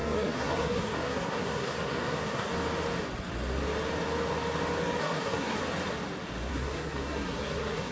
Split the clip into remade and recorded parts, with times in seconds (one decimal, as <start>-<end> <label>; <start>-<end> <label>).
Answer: 0.0-2.5 remade; 2.5-5.0 recorded; 5.0-5.6 remade; 5.6-6.5 recorded; 6.5-7.9 remade